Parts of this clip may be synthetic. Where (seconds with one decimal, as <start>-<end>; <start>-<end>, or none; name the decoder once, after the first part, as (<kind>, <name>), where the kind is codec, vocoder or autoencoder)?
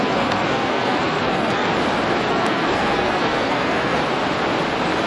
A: 0.0-1.7 (codec, SNAC); 2.3-4.0